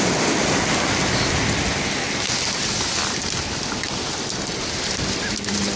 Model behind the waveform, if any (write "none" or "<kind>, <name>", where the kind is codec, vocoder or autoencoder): none